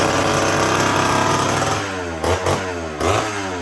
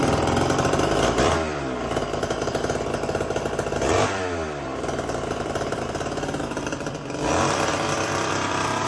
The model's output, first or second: second